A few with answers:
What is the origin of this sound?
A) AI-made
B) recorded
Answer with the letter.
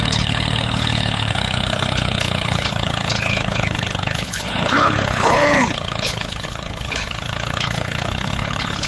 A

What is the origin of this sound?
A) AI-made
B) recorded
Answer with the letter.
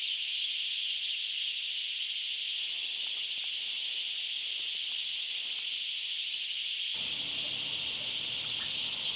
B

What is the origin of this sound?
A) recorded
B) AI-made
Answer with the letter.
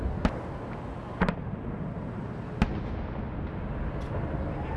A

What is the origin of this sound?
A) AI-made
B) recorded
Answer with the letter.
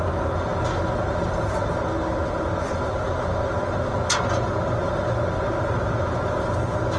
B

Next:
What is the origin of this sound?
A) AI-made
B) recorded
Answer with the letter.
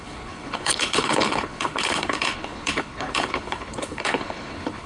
A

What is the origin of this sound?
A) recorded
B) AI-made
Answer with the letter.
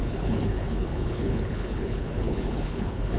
B